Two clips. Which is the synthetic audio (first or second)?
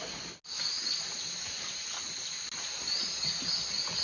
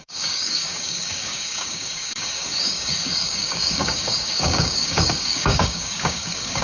second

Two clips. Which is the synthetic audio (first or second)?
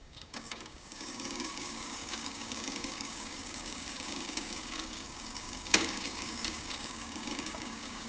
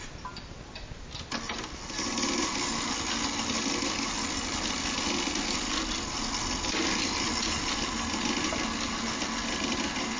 first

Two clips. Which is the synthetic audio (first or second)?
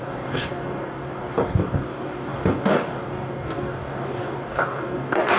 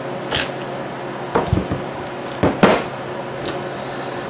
first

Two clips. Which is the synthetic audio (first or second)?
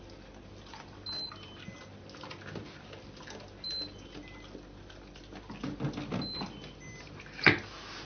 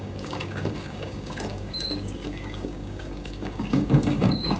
second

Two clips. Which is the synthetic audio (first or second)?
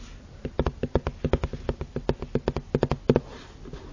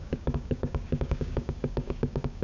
second